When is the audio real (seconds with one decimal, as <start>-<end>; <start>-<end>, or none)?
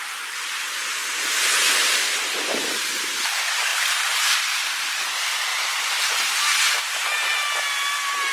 0.0-3.7; 4.4-8.3